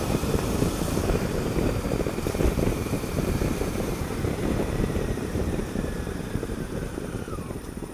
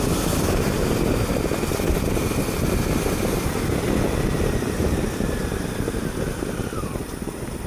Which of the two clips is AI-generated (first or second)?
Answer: first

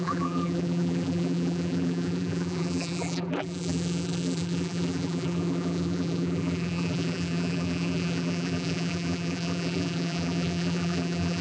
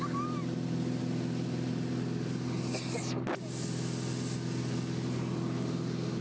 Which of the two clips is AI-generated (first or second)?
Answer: first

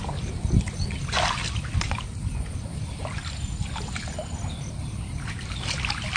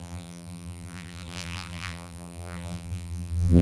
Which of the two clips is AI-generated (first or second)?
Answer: second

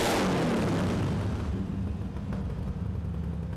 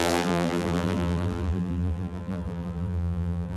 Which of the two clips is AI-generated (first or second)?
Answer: second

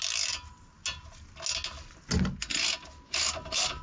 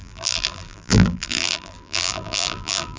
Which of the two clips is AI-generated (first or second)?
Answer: second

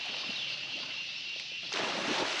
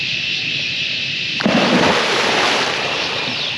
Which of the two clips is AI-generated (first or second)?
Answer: second